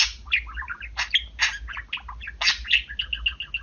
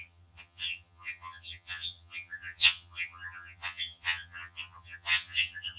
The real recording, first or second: first